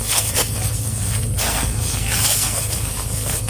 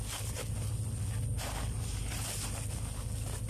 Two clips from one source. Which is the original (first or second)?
second